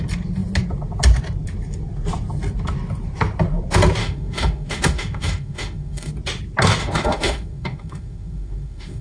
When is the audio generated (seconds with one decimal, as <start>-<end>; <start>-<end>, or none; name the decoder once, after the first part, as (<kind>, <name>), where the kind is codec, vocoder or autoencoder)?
4.0-6.1 (autoencoder, DAC-VAE); 6.8-9.0